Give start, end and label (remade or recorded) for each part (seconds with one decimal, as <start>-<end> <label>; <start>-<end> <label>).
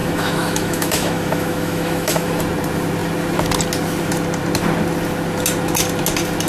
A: 0.0-2.4 remade; 2.4-6.5 recorded